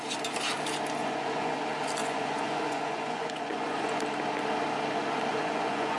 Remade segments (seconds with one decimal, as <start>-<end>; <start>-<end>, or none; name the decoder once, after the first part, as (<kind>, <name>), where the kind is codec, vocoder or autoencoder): 1.0-1.6 (vocoder, Vocos); 2.0-4.0; 5.3-6.0